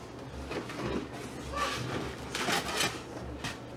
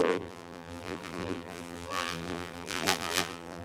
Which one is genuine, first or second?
first